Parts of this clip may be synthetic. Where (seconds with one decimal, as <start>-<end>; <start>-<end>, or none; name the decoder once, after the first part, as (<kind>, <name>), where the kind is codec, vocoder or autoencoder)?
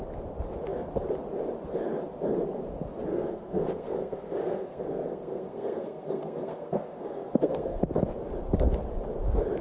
3.1-7.8 (codec, SNAC)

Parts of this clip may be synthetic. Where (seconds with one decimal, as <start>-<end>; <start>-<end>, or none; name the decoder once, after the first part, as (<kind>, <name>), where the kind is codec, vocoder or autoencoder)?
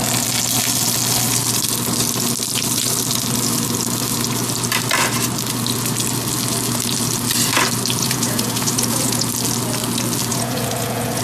8.0-9.3 (vocoder, Vocos); 10.3-11.2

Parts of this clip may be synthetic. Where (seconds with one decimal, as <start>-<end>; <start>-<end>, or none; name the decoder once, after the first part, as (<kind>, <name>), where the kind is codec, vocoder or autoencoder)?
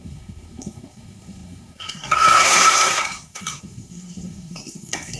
0.0-5.2 (codec, SNAC)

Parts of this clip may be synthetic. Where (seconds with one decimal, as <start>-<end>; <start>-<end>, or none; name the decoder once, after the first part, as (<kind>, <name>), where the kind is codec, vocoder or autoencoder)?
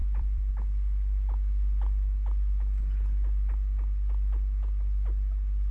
0.0-0.5 (vocoder, BigVGAN v2)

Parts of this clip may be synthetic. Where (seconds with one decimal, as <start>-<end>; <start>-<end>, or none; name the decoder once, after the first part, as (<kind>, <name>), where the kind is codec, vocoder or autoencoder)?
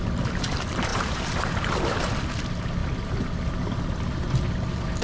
0.9-2.2 (vocoder, BigVGAN v2)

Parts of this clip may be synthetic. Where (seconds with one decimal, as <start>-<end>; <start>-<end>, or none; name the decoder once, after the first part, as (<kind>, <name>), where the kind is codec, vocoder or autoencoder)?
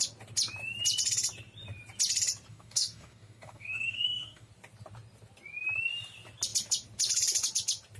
2.5-4.5 (codec, DAC)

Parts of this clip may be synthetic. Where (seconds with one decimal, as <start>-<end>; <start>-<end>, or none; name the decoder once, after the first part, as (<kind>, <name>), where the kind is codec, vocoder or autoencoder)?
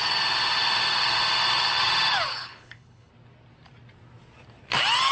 2.3-3.1 (codec, HILCodec)